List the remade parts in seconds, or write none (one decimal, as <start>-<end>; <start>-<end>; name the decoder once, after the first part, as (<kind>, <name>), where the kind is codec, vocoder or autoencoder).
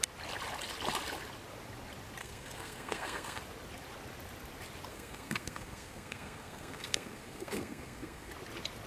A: 2.2-3.4 (codec, SNAC); 4.9-8.3